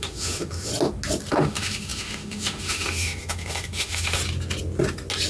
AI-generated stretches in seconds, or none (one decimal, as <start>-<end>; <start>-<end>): 0.0-0.7; 1.3-4.2